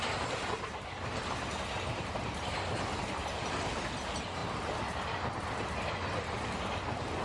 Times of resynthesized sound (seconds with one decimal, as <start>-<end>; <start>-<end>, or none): none